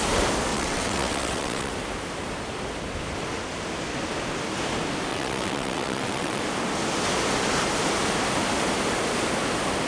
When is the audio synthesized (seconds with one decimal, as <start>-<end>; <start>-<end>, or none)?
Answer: 0.5-1.7; 5.1-6.4